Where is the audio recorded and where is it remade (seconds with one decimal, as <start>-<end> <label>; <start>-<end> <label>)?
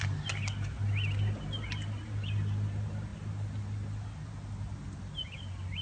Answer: 0.0-5.8 recorded